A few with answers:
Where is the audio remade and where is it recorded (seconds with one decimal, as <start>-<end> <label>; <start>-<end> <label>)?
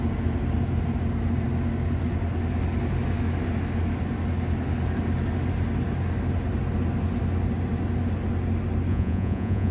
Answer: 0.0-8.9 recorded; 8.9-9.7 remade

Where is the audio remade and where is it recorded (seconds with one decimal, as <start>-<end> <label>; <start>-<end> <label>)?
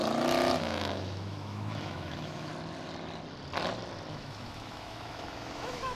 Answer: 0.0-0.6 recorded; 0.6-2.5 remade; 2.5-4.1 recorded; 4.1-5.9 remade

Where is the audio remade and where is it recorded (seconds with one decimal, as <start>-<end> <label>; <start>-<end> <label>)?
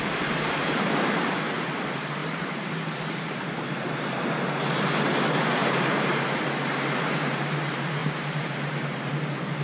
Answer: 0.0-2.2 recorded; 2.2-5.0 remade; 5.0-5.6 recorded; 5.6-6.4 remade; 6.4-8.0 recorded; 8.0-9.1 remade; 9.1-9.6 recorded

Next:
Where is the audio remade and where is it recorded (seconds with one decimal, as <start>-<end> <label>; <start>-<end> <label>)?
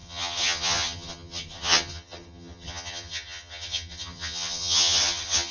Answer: 0.0-5.5 remade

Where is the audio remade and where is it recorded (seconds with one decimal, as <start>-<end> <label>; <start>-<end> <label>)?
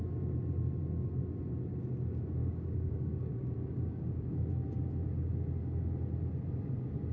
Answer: 0.0-2.4 recorded; 2.4-4.5 remade; 4.5-7.1 recorded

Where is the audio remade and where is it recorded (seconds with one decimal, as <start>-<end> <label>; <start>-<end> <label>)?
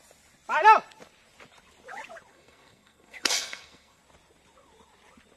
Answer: 0.0-2.3 recorded; 2.3-4.0 remade; 4.0-5.4 recorded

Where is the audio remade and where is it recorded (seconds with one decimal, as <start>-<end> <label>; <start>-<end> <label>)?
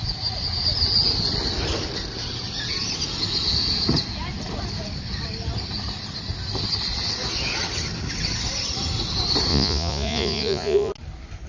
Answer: 0.0-9.5 recorded; 9.5-10.9 remade; 10.9-11.5 recorded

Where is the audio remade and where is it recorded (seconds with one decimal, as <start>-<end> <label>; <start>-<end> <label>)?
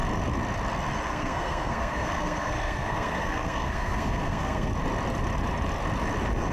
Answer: 0.0-1.1 recorded; 1.1-4.7 remade; 4.7-6.5 recorded